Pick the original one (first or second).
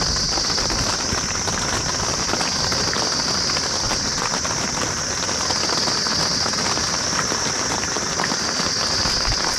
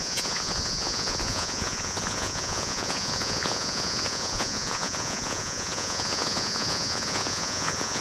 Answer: first